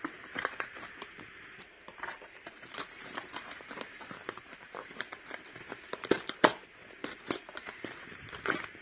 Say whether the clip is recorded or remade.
remade